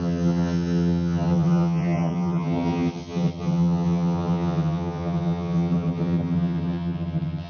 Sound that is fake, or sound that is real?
fake